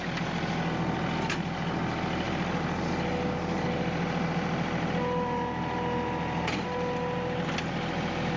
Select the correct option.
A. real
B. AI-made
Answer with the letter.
A